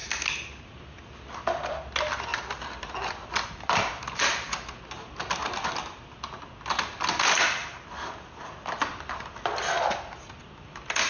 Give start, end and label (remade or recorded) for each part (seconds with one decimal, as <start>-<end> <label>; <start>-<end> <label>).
0.0-2.3 recorded; 2.3-4.8 remade; 4.8-11.1 recorded